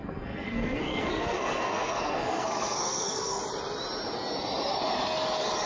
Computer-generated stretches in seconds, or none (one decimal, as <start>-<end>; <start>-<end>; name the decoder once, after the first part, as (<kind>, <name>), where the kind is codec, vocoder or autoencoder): 0.0-3.4 (codec, SNAC)